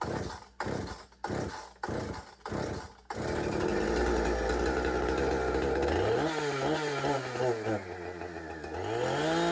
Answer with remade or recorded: recorded